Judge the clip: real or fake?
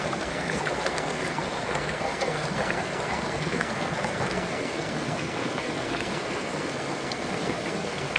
fake